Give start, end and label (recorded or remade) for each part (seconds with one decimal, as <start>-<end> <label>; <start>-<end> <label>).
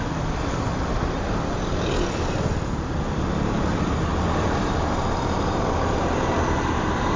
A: 0.0-4.1 recorded; 4.1-6.3 remade; 6.3-7.2 recorded